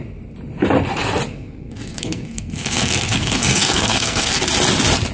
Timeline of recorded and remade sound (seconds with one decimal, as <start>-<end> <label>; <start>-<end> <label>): 0.0-1.3 recorded; 1.3-4.4 remade; 4.4-5.1 recorded